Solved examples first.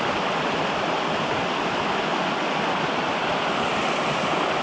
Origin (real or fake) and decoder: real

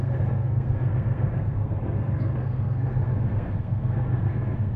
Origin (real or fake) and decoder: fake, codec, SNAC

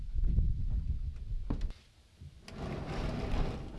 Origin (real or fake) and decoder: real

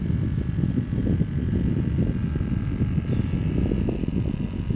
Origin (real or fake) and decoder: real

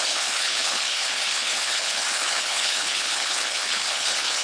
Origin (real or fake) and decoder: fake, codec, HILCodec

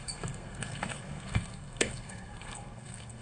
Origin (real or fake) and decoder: fake, codec, SNAC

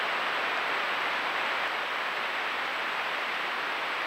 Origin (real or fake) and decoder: fake, vocoder, BigVGAN v2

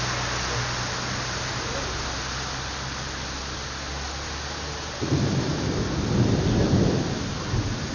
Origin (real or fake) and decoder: real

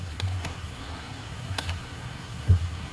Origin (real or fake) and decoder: fake, codec, SNAC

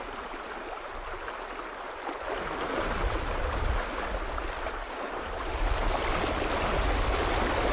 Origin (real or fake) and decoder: real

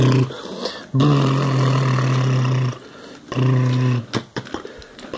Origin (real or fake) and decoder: real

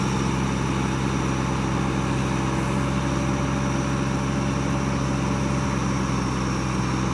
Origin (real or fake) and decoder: real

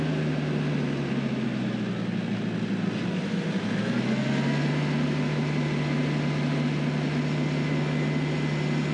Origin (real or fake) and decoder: real